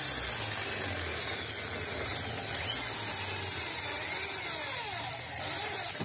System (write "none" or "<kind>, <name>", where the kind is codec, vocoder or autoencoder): none